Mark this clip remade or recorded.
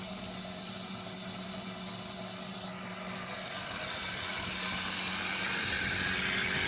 recorded